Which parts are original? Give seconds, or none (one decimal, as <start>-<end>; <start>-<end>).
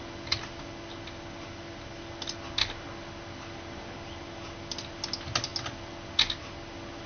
0.0-7.1